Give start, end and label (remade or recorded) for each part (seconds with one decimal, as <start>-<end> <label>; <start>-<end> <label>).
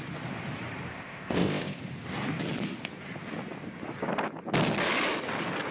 0.0-0.9 recorded; 0.9-1.8 remade; 1.8-5.7 recorded